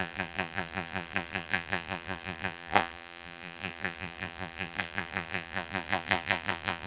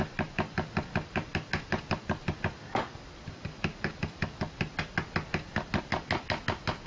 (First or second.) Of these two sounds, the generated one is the first